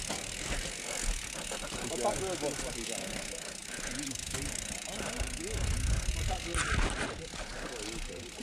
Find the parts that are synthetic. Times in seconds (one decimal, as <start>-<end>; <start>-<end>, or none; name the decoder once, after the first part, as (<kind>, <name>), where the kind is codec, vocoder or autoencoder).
3.6-5.3 (vocoder, BigVGAN v2)